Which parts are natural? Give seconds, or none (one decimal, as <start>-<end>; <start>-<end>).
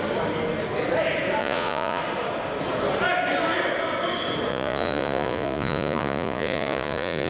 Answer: 0.0-1.4; 2.0-4.5